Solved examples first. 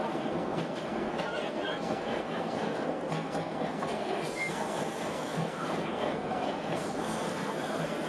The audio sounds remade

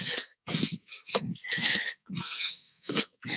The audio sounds remade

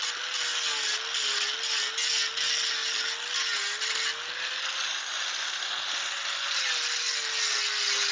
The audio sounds recorded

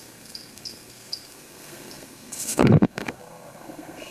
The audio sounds remade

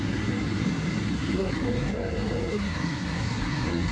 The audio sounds remade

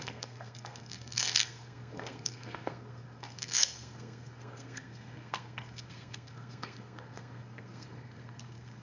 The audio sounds remade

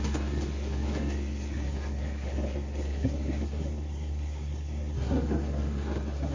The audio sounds remade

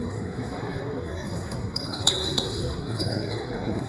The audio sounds remade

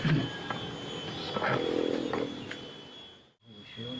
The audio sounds recorded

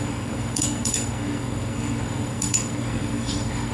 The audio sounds remade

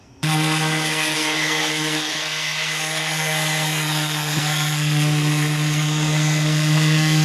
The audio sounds remade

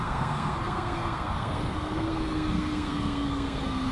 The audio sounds remade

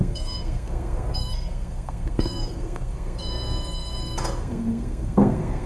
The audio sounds remade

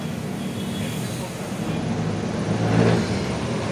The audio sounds recorded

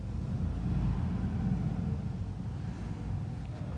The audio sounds recorded